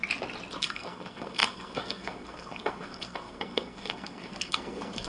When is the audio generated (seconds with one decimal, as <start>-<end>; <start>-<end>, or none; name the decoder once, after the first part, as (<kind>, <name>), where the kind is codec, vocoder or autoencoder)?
0.6-5.1 (codec, SNAC)